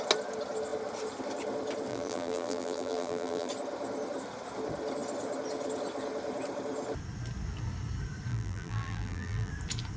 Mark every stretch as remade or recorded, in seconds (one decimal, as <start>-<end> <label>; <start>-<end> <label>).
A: 0.0-1.9 recorded; 1.9-3.5 remade; 3.5-8.3 recorded; 8.3-9.5 remade; 9.5-10.0 recorded